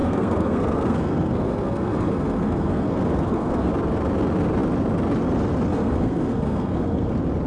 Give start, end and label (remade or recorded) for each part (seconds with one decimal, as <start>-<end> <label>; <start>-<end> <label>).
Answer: 0.0-3.7 remade; 3.7-5.7 recorded; 5.7-7.1 remade; 7.1-7.5 recorded